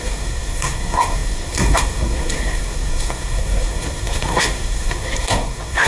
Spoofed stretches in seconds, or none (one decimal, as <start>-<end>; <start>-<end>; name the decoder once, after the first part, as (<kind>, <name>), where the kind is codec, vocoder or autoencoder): 0.0-5.9 (codec, SNAC)